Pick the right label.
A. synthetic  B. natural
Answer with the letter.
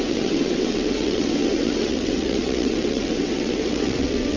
A